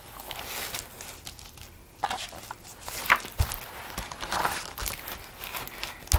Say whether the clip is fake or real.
real